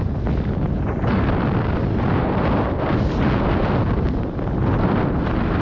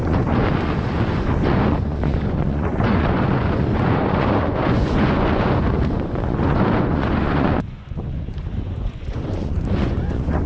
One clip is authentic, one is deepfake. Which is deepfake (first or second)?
second